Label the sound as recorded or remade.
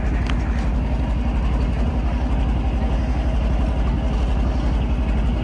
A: recorded